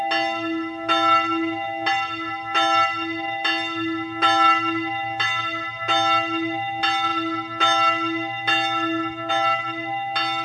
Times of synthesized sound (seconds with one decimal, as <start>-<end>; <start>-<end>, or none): none

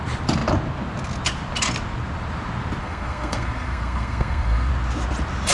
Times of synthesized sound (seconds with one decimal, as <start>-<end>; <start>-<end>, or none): 2.8-4.7

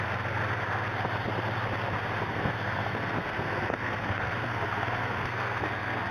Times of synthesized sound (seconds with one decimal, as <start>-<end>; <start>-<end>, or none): 2.2-6.1